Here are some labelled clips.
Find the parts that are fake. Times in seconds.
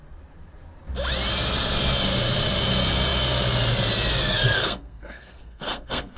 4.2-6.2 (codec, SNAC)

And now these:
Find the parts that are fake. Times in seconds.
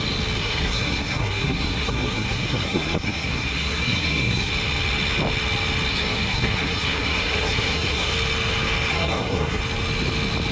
0.4-4.5 (codec, SNAC); 5.9-8.1; 8.9-9.6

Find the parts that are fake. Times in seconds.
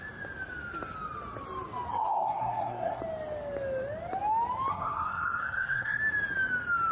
1.9-3.0 (codec, SNAC); 4.7-6.0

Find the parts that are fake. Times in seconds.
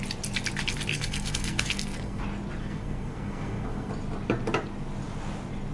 0.9-2.2 (codec, SNAC); 2.6-3.9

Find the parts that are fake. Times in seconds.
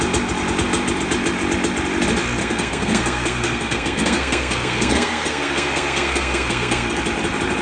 2.4-7.0 (codec, SNAC)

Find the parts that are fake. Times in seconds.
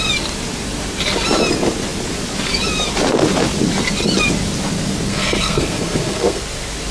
5.1-6.4 (codec, SNAC)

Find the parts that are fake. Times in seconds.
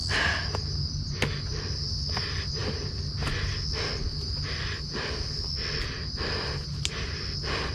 none